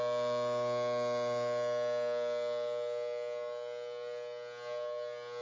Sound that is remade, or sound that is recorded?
recorded